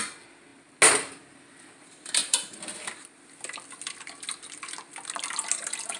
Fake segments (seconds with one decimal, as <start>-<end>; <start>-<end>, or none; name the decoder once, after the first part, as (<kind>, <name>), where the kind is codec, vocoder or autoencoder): 2.2-3.2 (vocoder, BigVGAN v2)